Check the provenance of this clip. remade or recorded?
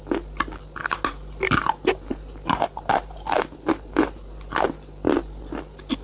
recorded